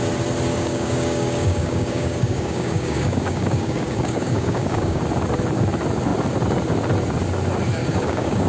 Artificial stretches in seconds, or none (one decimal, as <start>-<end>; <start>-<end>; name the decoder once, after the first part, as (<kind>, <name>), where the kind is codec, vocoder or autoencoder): 0.5-5.0 (codec, DAC); 7.8-8.5